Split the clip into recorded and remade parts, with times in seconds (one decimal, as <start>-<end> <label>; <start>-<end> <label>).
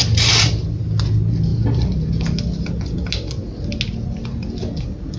0.0-5.2 recorded